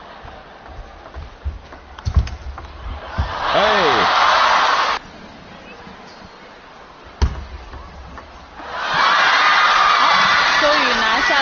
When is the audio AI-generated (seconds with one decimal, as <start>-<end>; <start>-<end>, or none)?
none